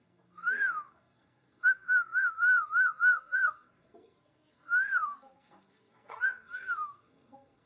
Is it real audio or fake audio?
fake